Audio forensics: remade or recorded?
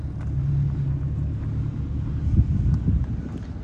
recorded